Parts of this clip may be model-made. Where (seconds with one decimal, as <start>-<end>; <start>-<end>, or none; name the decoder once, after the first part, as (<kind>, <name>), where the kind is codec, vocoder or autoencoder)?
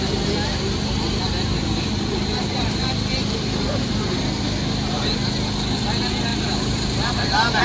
2.1-4.2 (vocoder, BigVGAN v2); 6.3-7.6